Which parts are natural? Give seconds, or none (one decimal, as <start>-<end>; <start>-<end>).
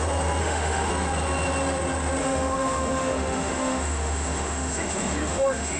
0.0-0.4; 0.9-2.2